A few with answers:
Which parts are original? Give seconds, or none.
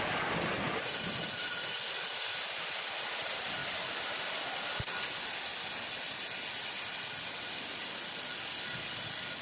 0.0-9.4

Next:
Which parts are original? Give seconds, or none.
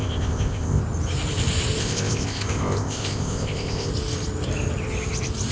0.8-1.8; 3.9-5.5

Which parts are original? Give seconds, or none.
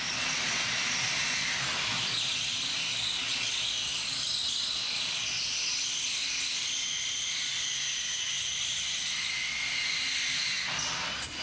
0.0-11.4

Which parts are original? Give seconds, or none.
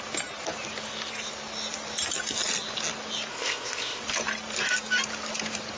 0.0-3.3; 4.0-5.8